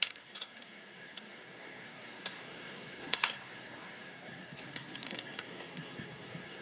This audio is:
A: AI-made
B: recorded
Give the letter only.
A